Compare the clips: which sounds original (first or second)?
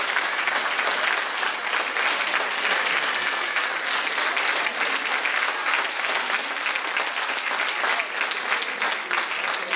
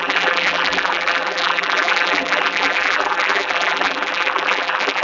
first